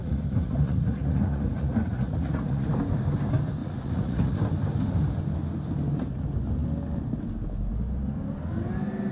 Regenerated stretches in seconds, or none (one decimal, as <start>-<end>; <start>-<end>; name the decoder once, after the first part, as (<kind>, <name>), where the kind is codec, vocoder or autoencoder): 0.0-2.7 (vocoder, Vocos); 3.6-4.4